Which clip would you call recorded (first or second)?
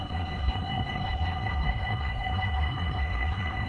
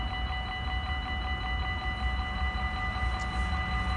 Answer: second